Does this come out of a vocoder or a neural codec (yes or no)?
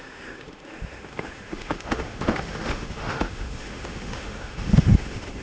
yes